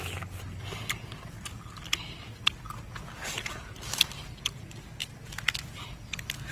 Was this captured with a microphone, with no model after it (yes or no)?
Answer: yes